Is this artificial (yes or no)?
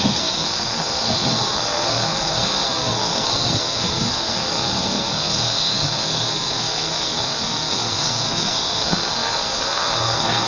yes